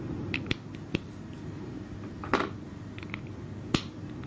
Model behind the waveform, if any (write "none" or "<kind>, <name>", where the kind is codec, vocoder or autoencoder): none